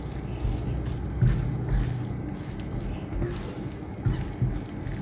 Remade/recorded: recorded